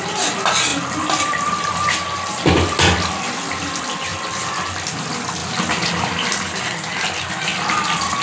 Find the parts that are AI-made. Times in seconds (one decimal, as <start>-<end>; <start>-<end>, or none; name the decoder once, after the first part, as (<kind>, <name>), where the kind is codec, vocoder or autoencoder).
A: 0.7-1.7 (vocoder, BigVGAN v2); 5.4-6.1